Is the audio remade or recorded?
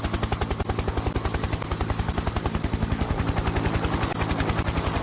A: recorded